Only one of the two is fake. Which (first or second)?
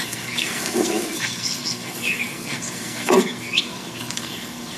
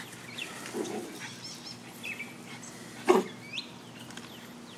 first